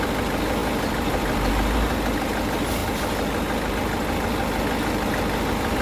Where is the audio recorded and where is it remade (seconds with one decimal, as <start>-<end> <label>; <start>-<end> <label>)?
0.0-5.8 recorded